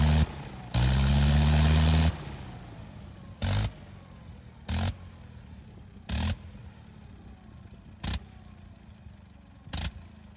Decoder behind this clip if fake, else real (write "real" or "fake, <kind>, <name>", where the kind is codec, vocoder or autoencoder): real